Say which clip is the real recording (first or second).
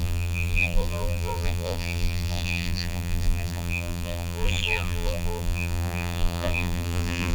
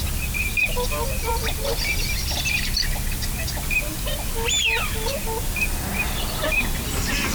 second